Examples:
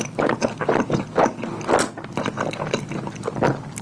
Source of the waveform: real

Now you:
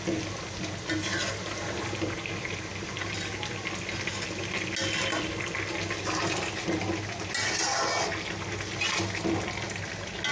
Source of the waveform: real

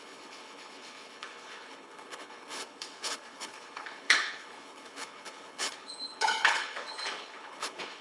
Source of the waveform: fake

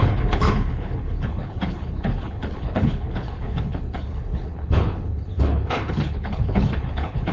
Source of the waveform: fake